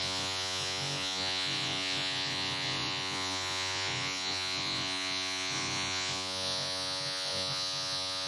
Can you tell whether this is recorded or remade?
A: remade